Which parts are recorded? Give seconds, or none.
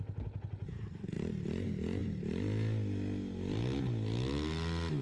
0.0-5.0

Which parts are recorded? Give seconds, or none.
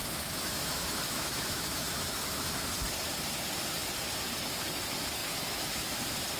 2.7-5.2; 5.8-6.4